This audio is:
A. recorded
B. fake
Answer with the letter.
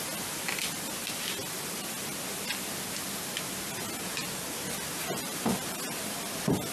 A